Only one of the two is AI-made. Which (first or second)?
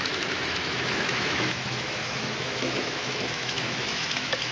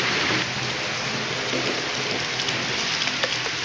first